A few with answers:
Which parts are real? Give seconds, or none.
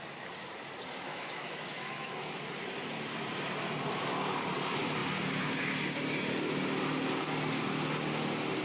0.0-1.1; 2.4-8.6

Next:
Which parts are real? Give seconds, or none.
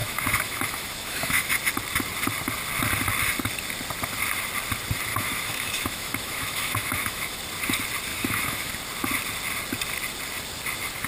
1.5-5.1; 7.4-8.1; 8.7-11.1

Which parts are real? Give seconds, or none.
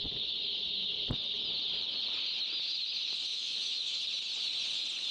0.0-3.3; 4.0-5.1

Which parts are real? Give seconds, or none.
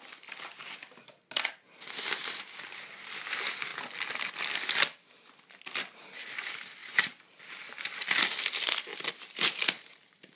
0.0-10.4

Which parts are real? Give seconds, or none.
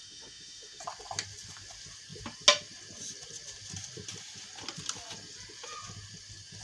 0.8-6.6